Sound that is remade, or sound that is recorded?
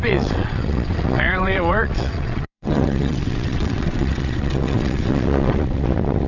remade